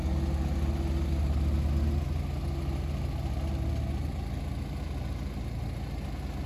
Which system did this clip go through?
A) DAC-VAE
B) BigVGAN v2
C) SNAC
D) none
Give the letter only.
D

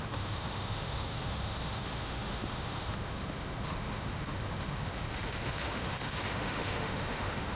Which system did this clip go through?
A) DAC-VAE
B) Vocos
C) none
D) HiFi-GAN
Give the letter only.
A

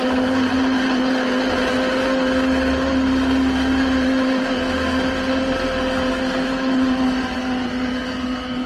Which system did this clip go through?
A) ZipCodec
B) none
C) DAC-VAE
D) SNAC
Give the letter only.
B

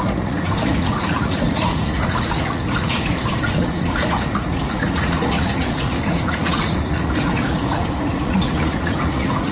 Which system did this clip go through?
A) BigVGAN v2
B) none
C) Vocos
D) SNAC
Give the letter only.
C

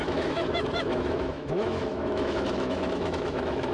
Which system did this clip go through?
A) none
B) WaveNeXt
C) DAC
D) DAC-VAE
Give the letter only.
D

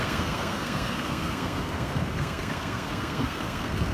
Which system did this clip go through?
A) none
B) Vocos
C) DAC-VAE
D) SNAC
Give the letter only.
D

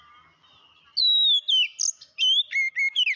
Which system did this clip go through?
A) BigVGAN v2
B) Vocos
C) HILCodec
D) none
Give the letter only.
D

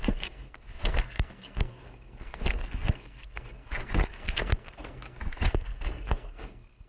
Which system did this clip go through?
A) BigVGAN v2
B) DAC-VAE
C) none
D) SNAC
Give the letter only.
D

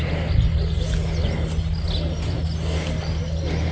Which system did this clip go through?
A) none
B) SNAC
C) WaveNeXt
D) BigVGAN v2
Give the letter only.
A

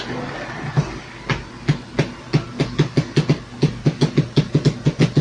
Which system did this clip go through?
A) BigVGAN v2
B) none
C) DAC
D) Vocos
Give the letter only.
B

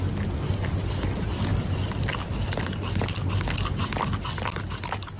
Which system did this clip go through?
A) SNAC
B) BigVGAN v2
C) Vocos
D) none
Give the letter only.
D